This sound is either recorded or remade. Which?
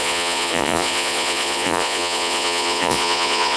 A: remade